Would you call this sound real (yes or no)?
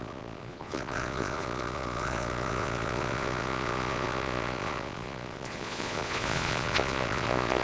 no